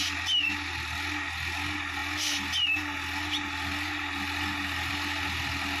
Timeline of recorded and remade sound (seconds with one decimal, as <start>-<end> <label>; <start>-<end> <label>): 0.0-5.8 recorded